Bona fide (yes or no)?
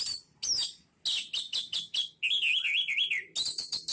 yes